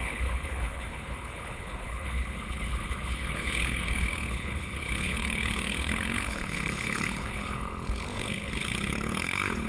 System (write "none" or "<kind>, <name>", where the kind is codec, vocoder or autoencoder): codec, HILCodec